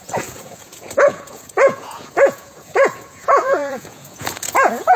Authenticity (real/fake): fake